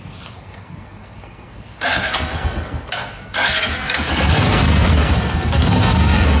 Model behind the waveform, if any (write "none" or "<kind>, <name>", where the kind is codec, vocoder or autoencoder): codec, SNAC